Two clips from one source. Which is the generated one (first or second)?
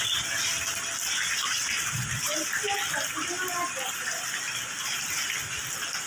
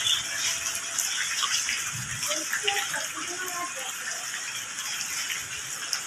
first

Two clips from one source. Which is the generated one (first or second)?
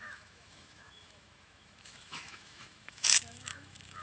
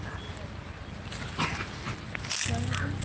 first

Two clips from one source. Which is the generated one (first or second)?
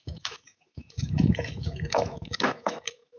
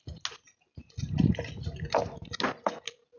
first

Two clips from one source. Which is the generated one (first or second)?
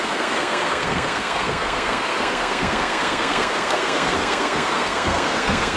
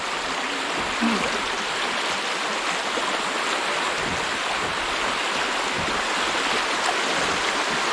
first